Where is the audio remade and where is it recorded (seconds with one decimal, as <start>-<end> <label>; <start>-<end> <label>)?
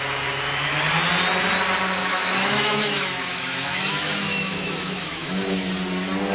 0.0-2.0 recorded; 2.0-5.7 remade; 5.7-6.3 recorded